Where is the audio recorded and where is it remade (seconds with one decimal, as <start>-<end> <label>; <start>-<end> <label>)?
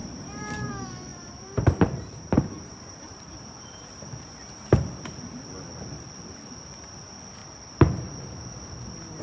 0.0-0.7 remade; 0.7-1.1 recorded; 1.1-4.4 remade; 4.4-7.4 recorded; 7.4-8.4 remade; 8.4-9.2 recorded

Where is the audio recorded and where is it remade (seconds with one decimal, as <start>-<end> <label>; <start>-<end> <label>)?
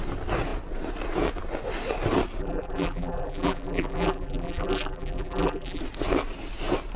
0.0-2.4 recorded; 2.4-5.8 remade; 5.8-7.0 recorded